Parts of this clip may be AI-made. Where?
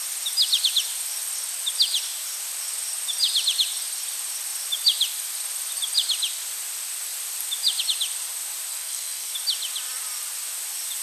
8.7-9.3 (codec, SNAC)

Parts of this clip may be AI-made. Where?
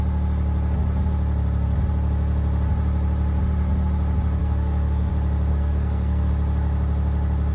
4.4-5.1 (codec, SNAC); 5.5-6.3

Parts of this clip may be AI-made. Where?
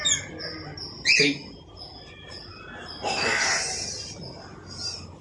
none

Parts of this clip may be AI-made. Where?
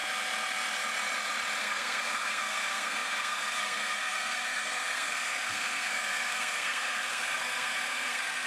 1.6-8.5 (codec, SNAC)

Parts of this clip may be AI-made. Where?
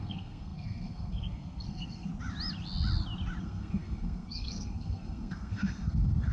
0.0-2.1 (codec, SNAC); 3.4-6.3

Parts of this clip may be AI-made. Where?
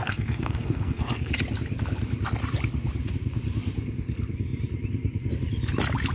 0.0-1.3 (codec, SNAC)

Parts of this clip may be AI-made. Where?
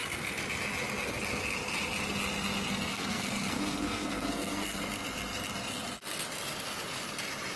2.9-4.8 (codec, SNAC)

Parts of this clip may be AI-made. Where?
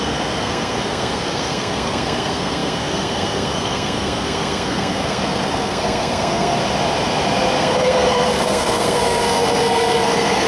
0.0-6.6 (codec, SNAC); 7.6-10.5